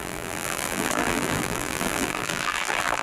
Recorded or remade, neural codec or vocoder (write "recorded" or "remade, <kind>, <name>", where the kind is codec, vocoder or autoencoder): remade, vocoder, BigVGAN v2